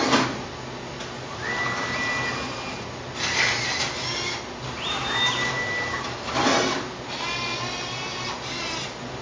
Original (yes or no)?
yes